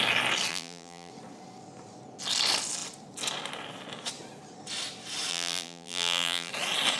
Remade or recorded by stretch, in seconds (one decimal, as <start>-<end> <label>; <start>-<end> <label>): 0.0-0.5 recorded; 0.5-1.1 remade; 1.1-5.3 recorded; 5.3-6.5 remade; 6.5-7.0 recorded